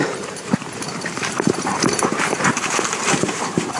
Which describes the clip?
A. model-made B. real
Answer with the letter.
A